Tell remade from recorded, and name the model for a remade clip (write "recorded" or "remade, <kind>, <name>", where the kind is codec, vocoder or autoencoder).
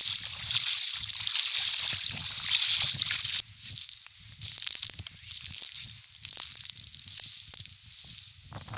recorded